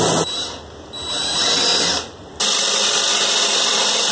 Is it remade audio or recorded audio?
recorded